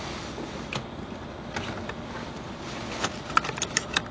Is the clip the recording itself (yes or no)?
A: yes